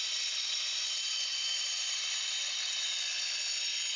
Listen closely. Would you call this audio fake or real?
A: real